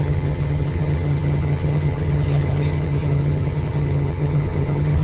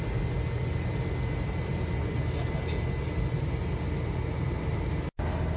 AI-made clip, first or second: first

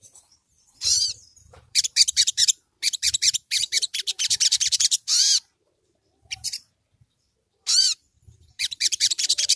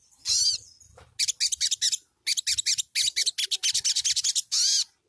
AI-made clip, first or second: first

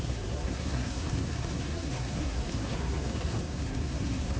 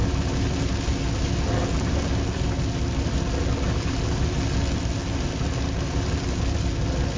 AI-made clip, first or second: first